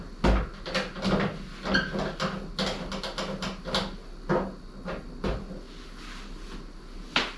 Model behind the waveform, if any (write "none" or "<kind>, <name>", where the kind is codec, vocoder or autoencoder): none